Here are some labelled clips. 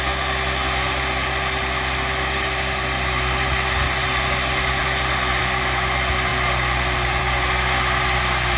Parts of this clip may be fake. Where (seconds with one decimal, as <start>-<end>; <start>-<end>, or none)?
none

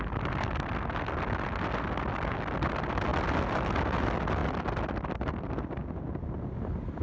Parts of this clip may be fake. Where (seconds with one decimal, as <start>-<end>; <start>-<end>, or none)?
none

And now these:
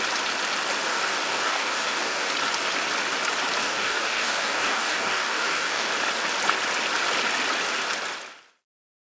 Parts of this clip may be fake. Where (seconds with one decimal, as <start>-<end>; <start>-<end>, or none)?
0.9-2.3; 3.6-5.9

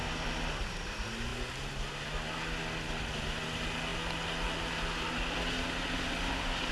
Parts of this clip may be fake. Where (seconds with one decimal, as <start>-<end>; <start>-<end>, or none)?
none

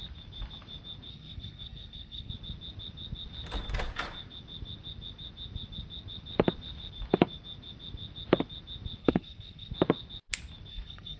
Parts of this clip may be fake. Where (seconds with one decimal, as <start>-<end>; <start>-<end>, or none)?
1.1-2.3; 9.0-9.7; 10.7-11.2

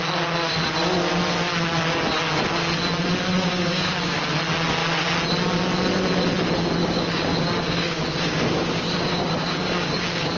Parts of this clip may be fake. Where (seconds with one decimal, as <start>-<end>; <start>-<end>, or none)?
3.5-4.3; 6.8-10.4